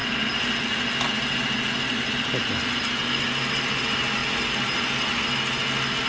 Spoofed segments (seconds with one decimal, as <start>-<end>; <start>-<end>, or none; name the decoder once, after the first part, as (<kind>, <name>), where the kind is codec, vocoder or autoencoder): none